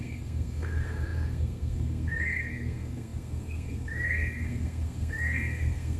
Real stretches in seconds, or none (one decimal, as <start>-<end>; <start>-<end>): none